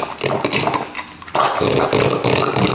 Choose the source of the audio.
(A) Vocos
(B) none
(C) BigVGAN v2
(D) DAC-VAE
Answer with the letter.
B